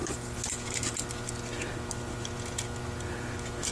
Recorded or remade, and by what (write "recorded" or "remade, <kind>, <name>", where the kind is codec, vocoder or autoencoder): recorded